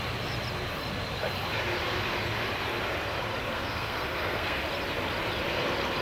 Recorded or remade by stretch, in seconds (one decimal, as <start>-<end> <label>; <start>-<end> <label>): 0.0-3.5 recorded; 3.5-4.6 remade; 4.6-6.0 recorded